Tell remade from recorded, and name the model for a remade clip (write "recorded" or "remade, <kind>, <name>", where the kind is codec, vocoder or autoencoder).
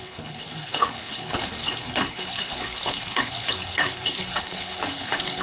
remade, codec, HILCodec